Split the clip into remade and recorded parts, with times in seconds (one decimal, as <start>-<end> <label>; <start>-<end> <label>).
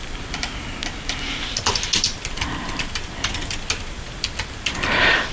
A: 0.0-5.3 recorded